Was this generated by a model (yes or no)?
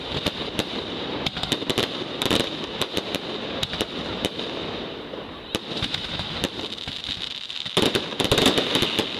no